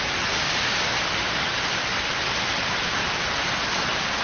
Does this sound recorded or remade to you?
recorded